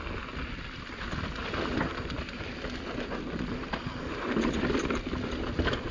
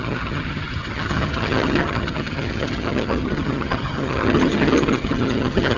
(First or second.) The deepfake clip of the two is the second